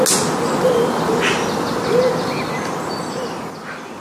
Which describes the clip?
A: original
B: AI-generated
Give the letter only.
A